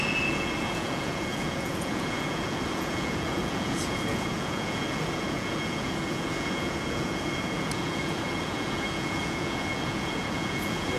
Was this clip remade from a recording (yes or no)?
yes